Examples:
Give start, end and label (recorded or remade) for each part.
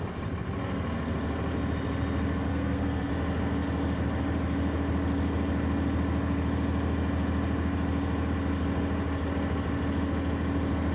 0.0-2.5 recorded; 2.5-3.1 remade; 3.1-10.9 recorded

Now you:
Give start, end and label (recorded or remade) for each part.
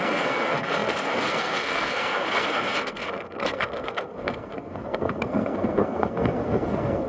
0.0-7.1 remade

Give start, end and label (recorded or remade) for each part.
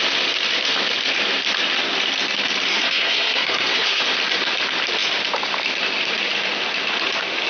0.0-2.7 recorded; 2.7-4.0 remade; 4.0-7.5 recorded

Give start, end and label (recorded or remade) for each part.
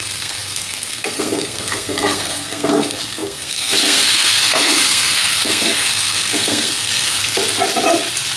0.0-7.4 remade; 7.4-8.4 recorded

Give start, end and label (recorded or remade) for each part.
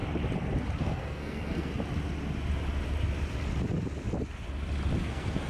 0.0-0.8 recorded; 0.8-1.7 remade; 1.7-5.0 recorded; 5.0-5.5 remade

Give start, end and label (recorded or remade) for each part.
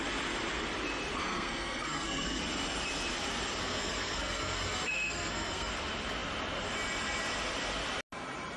0.0-1.2 recorded; 1.2-2.4 remade; 2.4-3.6 recorded; 3.6-5.7 remade; 5.7-8.6 recorded